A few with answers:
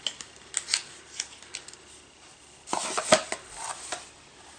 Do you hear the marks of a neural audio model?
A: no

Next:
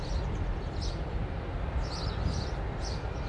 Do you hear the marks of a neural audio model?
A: no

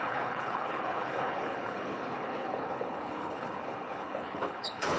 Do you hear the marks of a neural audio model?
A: yes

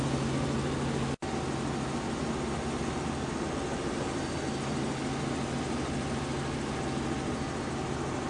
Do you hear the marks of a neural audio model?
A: no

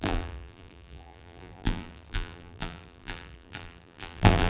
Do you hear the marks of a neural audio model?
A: yes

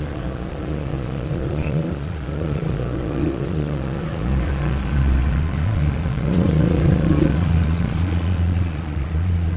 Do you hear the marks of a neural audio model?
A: yes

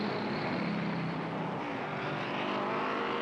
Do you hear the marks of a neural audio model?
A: no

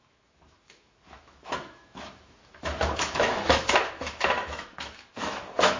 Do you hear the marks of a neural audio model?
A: yes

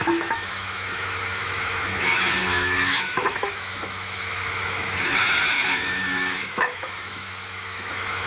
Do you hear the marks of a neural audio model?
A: yes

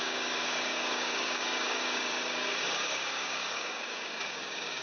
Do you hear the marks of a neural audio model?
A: yes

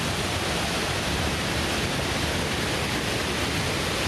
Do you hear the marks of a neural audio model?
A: no